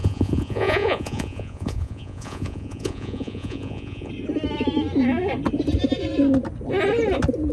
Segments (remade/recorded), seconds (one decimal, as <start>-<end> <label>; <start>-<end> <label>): 0.0-4.1 remade; 4.1-7.5 recorded